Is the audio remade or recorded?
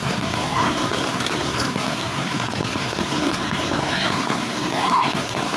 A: remade